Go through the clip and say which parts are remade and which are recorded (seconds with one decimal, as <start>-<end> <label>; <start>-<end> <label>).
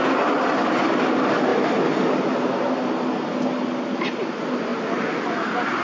0.0-5.8 recorded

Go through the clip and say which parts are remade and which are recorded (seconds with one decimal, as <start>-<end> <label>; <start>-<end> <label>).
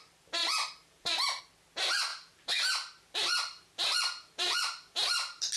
0.0-0.4 recorded; 0.4-1.4 remade; 1.4-2.1 recorded; 2.1-5.6 remade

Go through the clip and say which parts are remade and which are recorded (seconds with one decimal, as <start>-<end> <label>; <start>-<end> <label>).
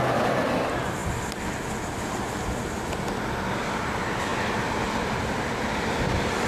0.0-1.0 remade; 1.0-3.2 recorded; 3.2-6.5 remade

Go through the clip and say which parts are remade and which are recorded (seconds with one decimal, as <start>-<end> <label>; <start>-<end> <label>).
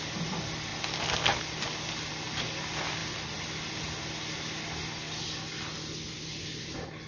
0.0-7.1 recorded